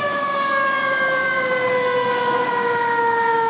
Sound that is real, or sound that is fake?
fake